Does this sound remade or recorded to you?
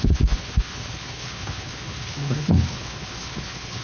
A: remade